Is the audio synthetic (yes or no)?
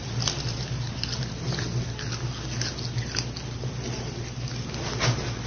no